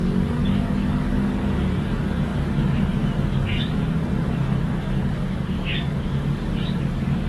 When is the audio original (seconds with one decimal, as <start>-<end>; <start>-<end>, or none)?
none